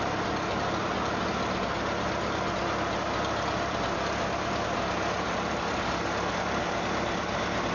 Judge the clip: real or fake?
real